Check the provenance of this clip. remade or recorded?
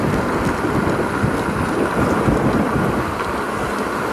recorded